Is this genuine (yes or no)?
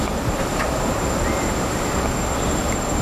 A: yes